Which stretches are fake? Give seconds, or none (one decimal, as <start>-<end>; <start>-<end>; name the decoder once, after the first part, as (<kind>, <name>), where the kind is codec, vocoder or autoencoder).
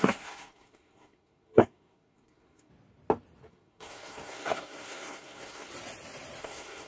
0.0-2.7 (codec, SNAC); 3.5-5.7; 6.4-6.9